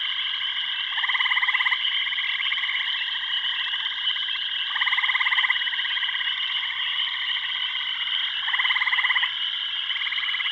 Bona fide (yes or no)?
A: yes